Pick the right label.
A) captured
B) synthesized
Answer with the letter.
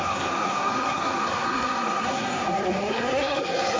B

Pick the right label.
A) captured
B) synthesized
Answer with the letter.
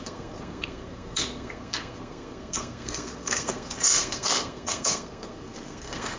B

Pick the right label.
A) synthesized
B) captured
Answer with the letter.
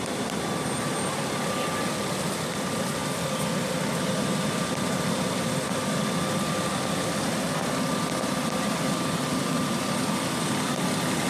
B